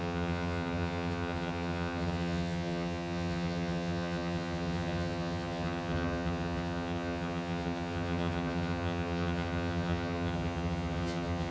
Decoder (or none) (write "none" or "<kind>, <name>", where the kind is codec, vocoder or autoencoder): vocoder, HiFi-GAN